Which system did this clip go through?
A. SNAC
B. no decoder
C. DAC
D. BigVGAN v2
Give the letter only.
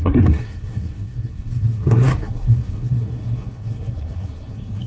A